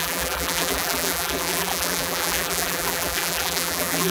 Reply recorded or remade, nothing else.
remade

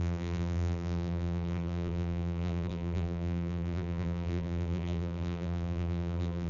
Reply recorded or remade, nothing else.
remade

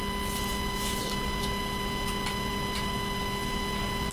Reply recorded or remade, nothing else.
recorded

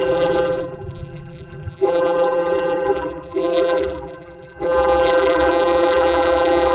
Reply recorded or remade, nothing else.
remade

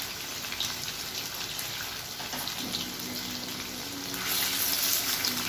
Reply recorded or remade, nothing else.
recorded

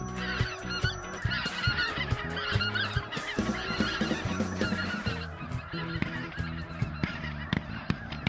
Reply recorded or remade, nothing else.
remade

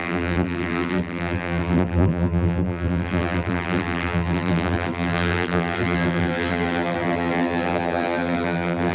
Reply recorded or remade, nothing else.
remade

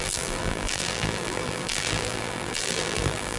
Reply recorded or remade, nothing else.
remade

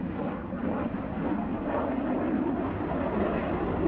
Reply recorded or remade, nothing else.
recorded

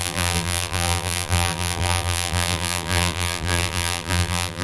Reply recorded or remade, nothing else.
remade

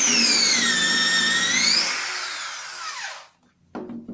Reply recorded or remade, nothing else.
recorded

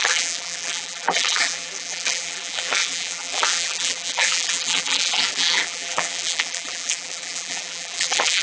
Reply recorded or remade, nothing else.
remade